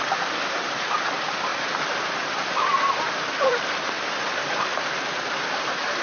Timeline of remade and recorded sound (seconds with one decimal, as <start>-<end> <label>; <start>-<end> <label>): 0.0-6.0 recorded